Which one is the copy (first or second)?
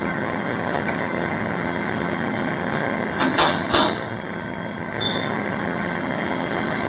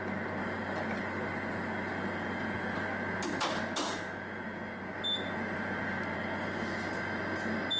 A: first